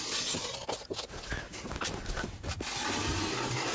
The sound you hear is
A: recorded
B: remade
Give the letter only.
A